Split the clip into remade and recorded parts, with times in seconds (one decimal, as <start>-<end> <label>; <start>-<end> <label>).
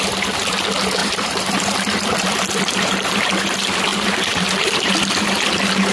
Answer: 0.0-1.0 recorded; 1.0-1.5 remade; 1.5-3.9 recorded; 3.9-4.9 remade; 4.9-5.9 recorded